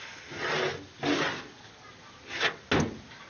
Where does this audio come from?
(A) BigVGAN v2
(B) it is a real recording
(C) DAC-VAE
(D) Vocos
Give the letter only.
B